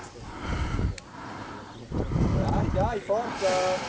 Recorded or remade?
recorded